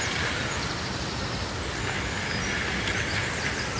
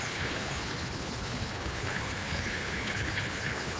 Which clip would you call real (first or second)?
first